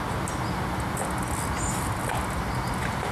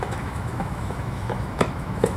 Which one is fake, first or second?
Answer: second